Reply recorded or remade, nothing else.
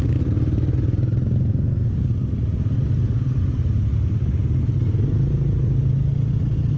recorded